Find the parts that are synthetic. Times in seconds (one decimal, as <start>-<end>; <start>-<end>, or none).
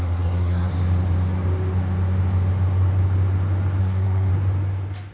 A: 0.0-0.7; 3.8-4.3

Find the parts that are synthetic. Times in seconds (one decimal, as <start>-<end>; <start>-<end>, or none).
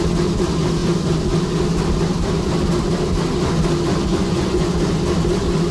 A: 4.1-4.7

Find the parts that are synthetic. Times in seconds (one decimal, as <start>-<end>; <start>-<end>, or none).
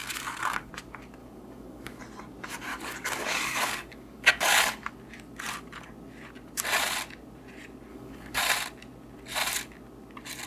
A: 0.0-0.7; 1.2-2.0; 2.7-4.9; 7.9-8.4